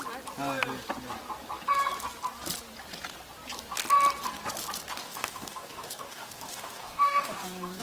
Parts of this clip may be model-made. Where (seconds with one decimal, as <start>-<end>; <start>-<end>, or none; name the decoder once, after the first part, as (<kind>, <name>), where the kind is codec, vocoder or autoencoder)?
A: 5.0-7.8 (codec, DAC)

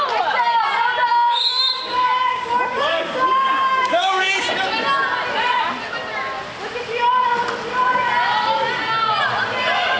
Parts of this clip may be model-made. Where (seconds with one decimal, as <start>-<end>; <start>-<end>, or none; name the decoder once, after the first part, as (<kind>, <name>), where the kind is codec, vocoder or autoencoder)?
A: 1.1-2.5 (codec, DAC); 2.9-4.4

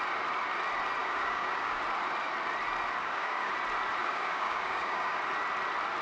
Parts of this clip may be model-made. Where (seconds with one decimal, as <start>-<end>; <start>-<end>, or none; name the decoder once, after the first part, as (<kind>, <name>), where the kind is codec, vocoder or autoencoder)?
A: 1.0-1.8 (codec, DAC); 3.0-3.5; 4.0-5.2

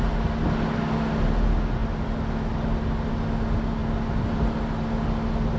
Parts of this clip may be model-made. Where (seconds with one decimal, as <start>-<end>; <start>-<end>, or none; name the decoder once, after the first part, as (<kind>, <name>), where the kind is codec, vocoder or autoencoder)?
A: none

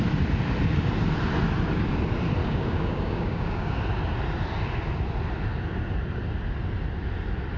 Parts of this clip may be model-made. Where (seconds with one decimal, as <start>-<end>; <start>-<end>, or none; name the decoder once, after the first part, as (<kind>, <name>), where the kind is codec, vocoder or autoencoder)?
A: 2.4-3.8 (codec, DAC)